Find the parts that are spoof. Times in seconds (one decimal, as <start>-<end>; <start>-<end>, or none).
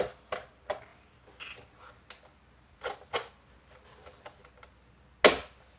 none